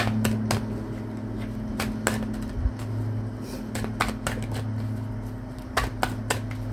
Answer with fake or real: real